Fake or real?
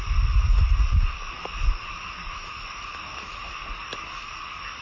real